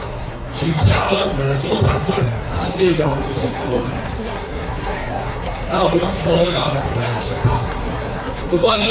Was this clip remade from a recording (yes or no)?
yes